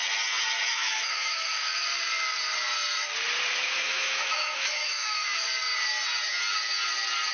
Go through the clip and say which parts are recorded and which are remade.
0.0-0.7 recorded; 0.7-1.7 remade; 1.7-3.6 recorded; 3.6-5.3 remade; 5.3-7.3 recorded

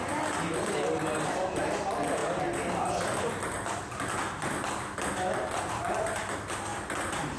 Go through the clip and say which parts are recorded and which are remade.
0.0-6.7 recorded; 6.7-7.4 remade